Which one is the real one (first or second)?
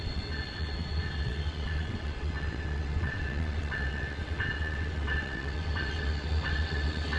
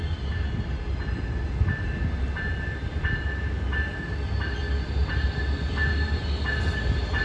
second